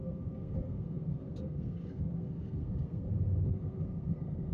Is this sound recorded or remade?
remade